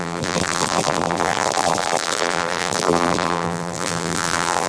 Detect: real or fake fake